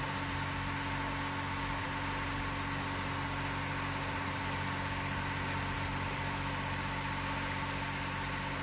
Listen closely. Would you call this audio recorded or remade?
recorded